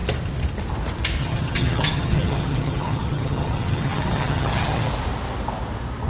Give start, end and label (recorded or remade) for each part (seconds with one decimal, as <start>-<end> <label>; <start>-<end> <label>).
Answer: 0.0-1.2 recorded; 1.2-4.9 remade; 4.9-6.1 recorded